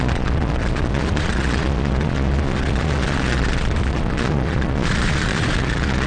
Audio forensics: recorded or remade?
remade